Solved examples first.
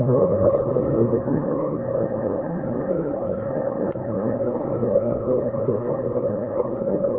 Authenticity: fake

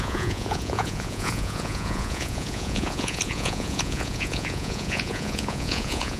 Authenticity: fake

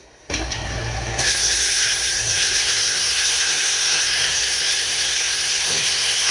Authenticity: fake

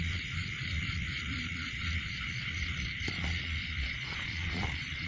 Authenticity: fake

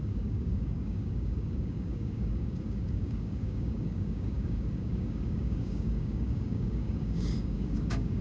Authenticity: fake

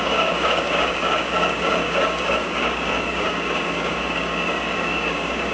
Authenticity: fake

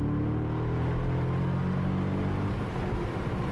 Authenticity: real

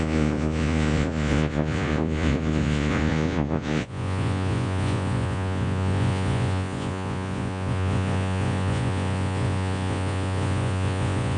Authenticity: fake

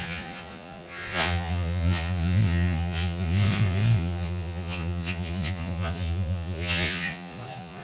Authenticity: fake